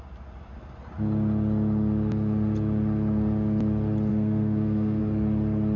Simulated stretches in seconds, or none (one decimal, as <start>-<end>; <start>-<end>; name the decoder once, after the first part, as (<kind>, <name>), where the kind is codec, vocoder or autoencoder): 4.1-5.0 (codec, SNAC)